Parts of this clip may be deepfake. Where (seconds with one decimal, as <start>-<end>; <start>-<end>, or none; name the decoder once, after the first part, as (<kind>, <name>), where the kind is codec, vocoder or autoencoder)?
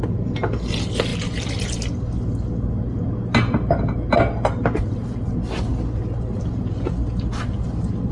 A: none